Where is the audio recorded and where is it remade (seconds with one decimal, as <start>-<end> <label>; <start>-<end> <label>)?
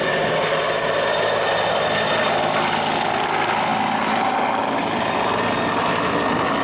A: 0.0-6.6 recorded